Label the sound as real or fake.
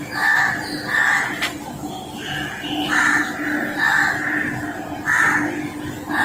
real